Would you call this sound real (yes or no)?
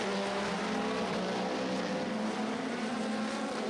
yes